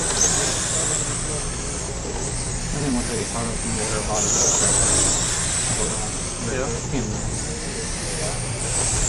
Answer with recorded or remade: remade